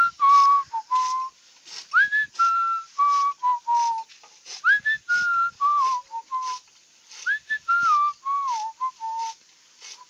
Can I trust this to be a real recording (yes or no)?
yes